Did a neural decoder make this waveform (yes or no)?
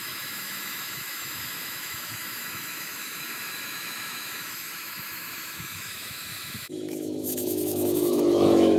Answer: yes